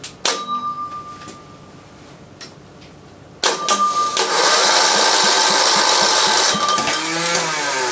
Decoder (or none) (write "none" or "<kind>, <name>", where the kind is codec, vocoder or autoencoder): none